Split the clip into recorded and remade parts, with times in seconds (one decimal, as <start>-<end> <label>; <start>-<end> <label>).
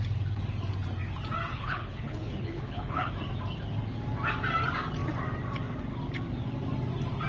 0.0-1.5 recorded; 1.5-3.1 remade; 3.1-7.3 recorded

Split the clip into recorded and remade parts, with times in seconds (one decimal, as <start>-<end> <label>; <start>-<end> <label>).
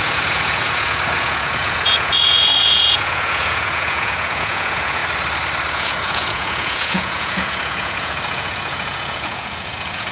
0.0-5.0 remade; 5.0-5.7 recorded; 5.7-10.1 remade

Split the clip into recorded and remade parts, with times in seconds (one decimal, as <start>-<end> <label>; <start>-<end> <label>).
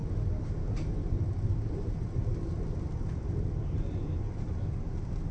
0.0-1.7 recorded; 1.7-2.3 remade; 2.3-4.4 recorded; 4.4-5.3 remade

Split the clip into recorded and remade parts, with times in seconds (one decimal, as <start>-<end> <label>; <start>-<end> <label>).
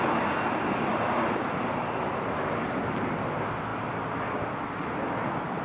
0.0-5.6 recorded